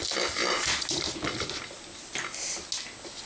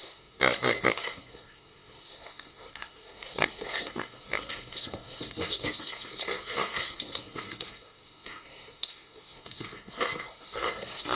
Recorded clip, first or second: first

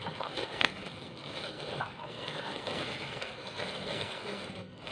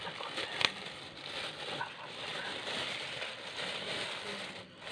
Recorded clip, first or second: second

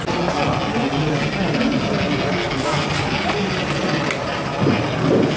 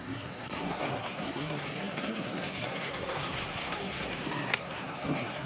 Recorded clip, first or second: first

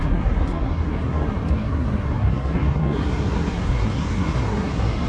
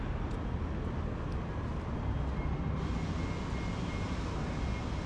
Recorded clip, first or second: second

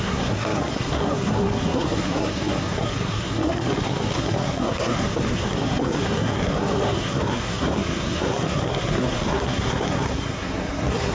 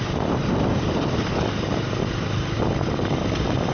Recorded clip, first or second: second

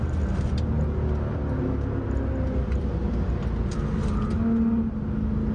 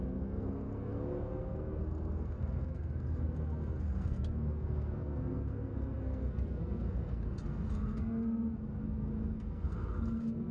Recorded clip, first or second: first